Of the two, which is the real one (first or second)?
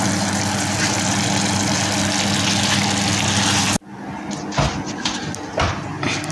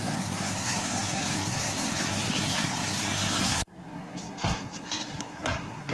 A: first